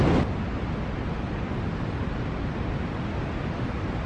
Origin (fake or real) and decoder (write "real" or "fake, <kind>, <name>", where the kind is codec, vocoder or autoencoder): real